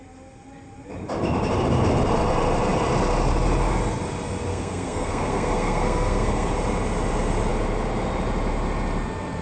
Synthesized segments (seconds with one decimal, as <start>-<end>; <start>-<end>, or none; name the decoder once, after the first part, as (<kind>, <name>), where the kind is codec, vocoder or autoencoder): 4.5-6.5 (codec, SNAC)